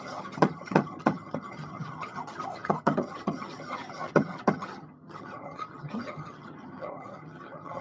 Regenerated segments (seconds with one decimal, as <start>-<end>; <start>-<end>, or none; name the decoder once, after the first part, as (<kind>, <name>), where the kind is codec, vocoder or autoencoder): 0.0-7.8 (vocoder, HiFi-GAN)